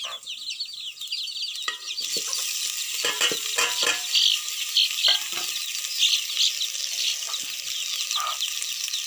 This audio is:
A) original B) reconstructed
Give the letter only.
A